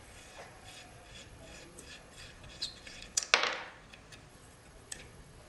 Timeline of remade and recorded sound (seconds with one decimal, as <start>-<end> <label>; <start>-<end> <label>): 0.0-3.2 remade; 3.2-4.3 recorded; 4.3-5.5 remade